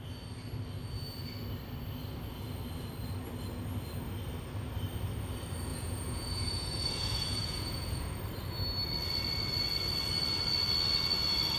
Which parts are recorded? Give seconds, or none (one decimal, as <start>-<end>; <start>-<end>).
0.0-5.7; 8.2-11.6